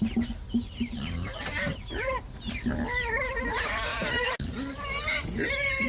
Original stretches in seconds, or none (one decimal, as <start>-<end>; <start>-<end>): 0.0-5.9